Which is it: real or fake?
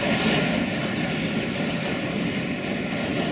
real